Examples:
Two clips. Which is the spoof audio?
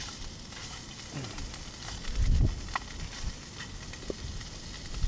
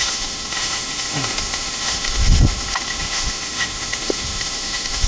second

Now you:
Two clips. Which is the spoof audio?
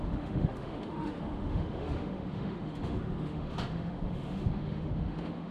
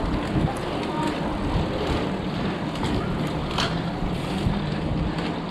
first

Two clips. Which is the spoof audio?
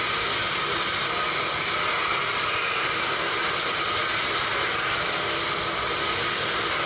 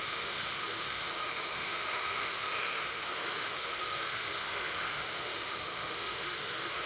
second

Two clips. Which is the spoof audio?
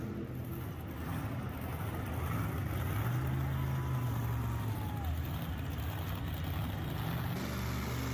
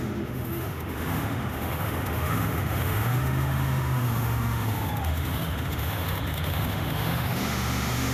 second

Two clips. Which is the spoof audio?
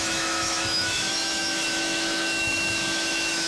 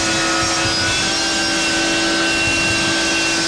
first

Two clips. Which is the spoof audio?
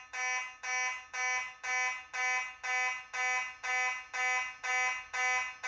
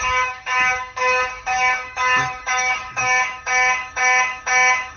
second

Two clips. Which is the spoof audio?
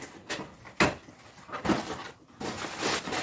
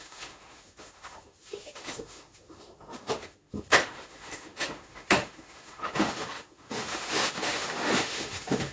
second